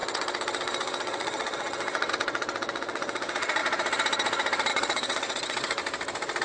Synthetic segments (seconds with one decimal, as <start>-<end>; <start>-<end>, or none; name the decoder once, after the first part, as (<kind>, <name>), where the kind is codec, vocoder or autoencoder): 0.0-3.6 (vocoder, WaveNeXt); 4.7-5.8